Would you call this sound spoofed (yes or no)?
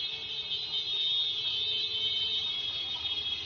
no